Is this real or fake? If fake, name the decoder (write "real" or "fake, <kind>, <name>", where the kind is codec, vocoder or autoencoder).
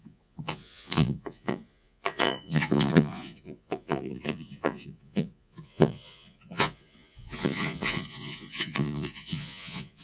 fake, vocoder, Vocos